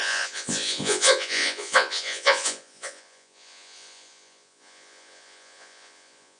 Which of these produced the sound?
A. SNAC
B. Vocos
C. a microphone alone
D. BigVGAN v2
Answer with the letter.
B